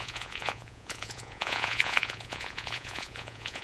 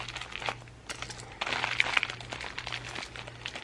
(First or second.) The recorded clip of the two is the second